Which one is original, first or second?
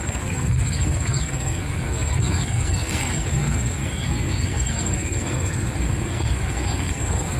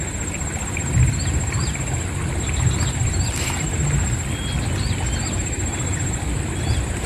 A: second